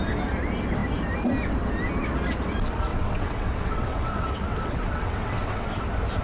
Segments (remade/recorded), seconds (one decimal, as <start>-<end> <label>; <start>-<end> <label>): 0.0-2.9 recorded; 2.9-5.8 remade; 5.8-6.2 recorded

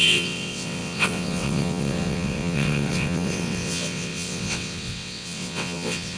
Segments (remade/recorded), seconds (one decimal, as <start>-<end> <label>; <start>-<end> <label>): 0.0-6.2 remade

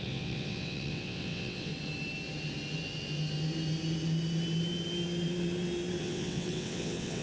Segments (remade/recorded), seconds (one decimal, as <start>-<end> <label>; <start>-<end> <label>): 0.0-1.7 remade; 1.7-6.0 recorded; 6.0-7.2 remade

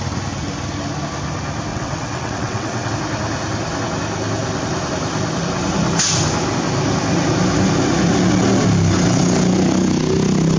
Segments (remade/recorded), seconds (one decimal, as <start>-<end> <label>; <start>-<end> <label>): 0.0-1.7 recorded; 1.7-2.9 remade; 2.9-10.6 recorded

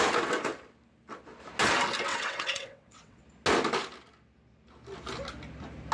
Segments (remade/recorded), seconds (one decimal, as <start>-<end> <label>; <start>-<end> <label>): 0.0-2.1 recorded; 2.1-3.2 remade; 3.2-5.9 recorded

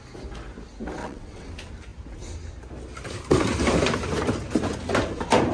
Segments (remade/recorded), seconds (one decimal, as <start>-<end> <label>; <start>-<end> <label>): 0.0-1.0 recorded; 1.0-1.5 remade; 1.5-5.5 recorded